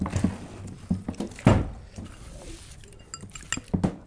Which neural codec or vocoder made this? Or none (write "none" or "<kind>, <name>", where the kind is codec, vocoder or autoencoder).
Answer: none